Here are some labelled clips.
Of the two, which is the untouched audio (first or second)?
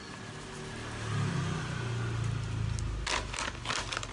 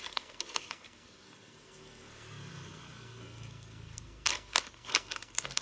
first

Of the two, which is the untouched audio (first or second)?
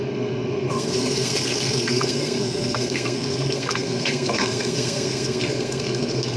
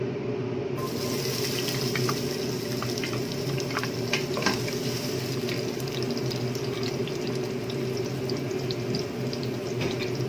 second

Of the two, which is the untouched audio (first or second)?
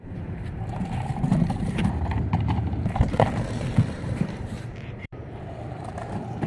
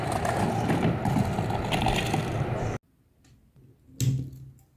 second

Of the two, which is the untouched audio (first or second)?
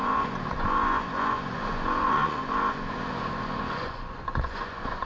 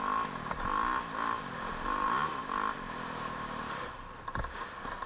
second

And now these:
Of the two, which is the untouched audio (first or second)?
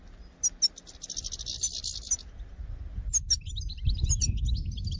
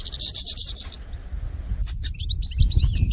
first